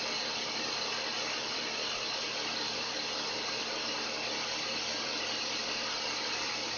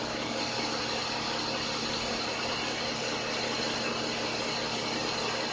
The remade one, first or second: first